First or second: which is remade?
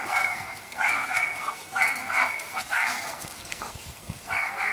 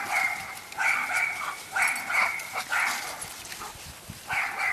first